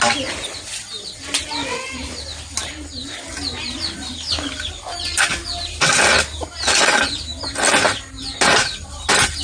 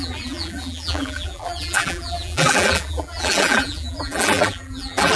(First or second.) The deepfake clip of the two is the second